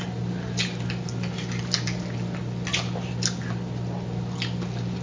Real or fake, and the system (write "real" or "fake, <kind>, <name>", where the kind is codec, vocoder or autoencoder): real